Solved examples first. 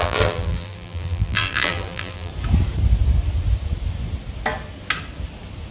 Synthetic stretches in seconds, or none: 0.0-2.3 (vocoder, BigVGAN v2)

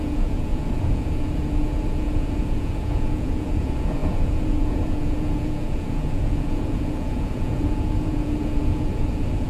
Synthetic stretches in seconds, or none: 0.0-9.5 (vocoder, Vocos)

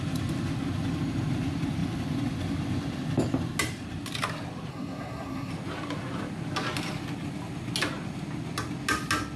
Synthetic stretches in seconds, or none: 4.7-5.5 (codec, SNAC)

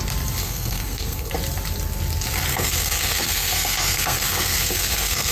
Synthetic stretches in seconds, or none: 0.4-1.3 (codec, SNAC); 2.5-5.3

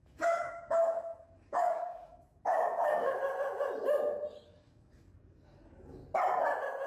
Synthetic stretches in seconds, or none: 0.0-3.2 (codec, DAC); 4.3-6.0

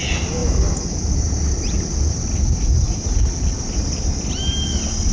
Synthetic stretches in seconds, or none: none

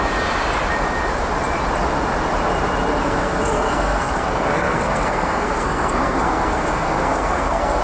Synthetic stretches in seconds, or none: 3.0-7.8 (codec, SNAC)